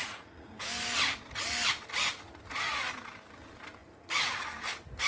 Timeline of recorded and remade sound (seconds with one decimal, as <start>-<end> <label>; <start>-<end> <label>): 0.0-0.5 remade; 0.5-5.1 recorded